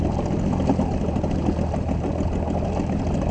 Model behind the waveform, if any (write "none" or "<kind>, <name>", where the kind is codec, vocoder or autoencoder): none